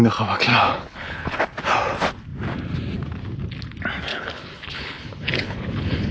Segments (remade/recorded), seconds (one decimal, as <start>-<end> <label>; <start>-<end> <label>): 0.0-0.5 recorded; 0.5-1.4 remade; 1.4-4.1 recorded; 4.1-6.1 remade